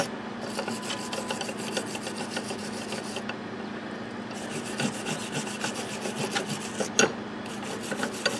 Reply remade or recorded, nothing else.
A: recorded